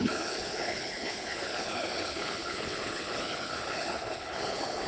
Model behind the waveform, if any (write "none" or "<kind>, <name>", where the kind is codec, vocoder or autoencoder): codec, HILCodec